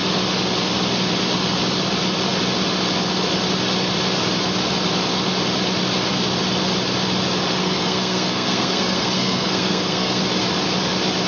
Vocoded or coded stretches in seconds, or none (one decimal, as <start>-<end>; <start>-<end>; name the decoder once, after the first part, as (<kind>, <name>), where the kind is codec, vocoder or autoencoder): 7.6-10.2 (codec, SNAC)